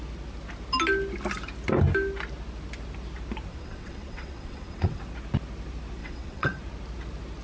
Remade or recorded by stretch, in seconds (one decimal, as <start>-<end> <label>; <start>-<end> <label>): 0.0-3.5 recorded; 3.5-5.0 remade; 5.0-6.0 recorded; 6.0-6.6 remade; 6.6-7.4 recorded